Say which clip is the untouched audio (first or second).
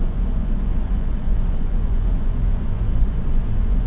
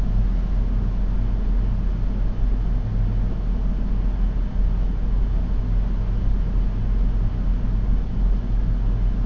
second